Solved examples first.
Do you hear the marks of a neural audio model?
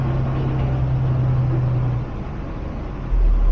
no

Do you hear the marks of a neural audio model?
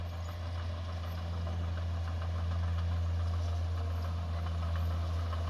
no